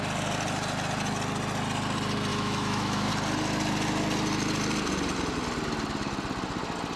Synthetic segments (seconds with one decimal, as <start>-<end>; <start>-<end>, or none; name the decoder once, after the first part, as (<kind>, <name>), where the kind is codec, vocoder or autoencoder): 2.3-3.1 (autoencoder, DAC-VAE)